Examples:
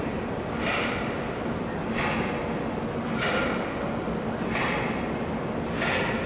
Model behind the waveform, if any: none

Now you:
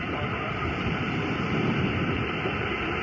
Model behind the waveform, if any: none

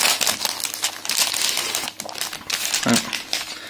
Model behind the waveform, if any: none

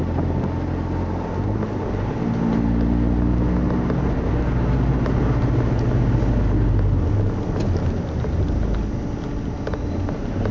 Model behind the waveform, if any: none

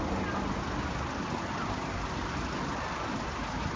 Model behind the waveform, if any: none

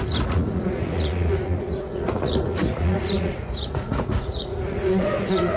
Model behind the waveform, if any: vocoder, Vocos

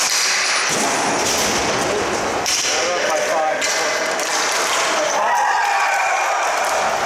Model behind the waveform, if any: none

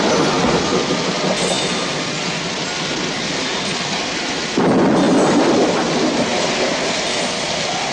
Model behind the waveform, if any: none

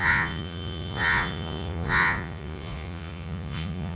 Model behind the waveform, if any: vocoder, Vocos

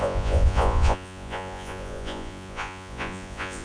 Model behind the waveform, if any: vocoder, Vocos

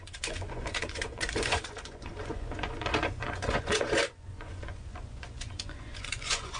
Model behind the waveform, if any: vocoder, Vocos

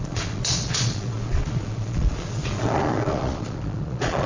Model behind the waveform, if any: vocoder, Vocos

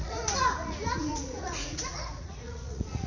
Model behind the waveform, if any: vocoder, Vocos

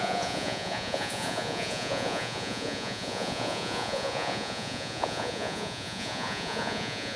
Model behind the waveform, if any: vocoder, Vocos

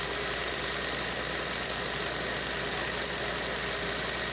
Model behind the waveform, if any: none